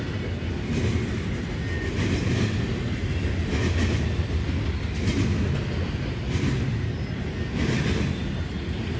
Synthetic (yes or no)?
no